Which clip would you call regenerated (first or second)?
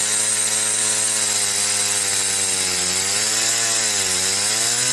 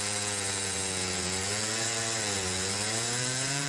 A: second